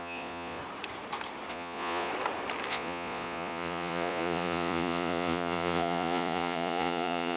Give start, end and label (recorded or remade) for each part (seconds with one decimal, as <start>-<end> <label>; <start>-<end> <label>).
0.0-0.6 remade; 0.6-1.5 recorded; 1.5-2.1 remade; 2.1-2.7 recorded; 2.7-7.4 remade